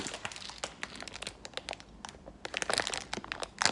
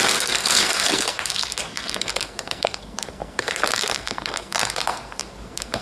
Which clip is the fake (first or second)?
second